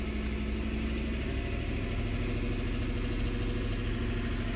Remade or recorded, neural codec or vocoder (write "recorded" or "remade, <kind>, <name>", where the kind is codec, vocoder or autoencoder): recorded